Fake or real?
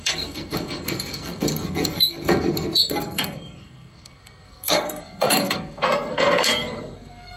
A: fake